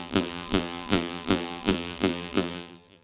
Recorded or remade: remade